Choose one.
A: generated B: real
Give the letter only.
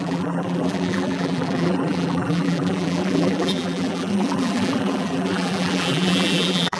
A